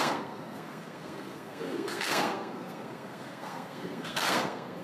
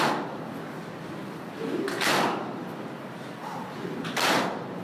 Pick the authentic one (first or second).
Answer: second